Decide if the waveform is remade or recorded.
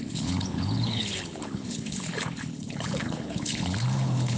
remade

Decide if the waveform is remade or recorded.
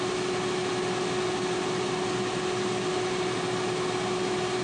recorded